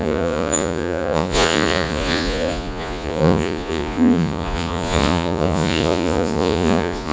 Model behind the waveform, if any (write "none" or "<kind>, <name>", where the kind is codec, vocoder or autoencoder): vocoder, Vocos